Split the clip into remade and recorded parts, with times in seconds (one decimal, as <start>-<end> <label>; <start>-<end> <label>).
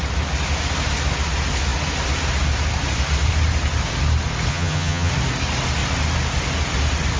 0.0-4.5 recorded; 4.5-5.1 remade; 5.1-7.2 recorded